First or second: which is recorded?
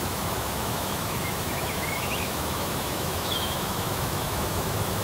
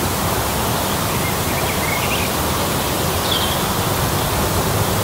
second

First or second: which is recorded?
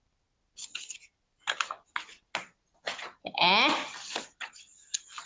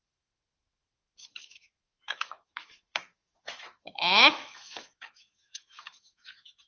first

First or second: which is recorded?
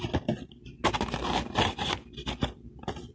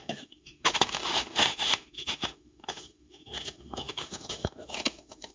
first